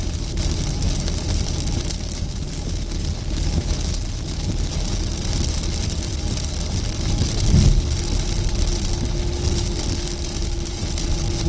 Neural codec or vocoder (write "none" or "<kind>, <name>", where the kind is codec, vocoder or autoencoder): none